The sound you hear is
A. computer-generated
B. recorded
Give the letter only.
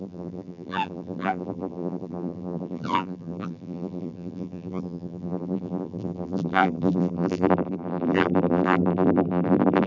A